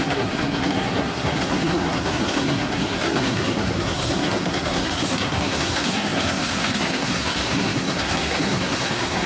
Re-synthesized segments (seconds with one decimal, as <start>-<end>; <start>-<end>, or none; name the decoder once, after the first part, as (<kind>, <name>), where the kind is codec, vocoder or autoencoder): 0.0-9.3 (codec, SNAC)